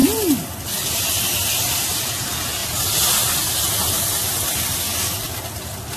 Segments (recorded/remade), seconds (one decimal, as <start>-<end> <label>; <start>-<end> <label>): 0.0-6.0 recorded